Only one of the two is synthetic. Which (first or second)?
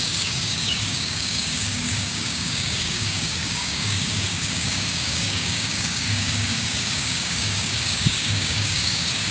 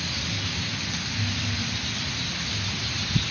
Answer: first